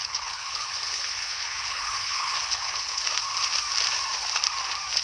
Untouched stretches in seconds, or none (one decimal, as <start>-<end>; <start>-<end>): 3.0-5.0